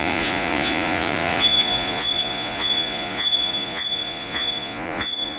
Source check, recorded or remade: remade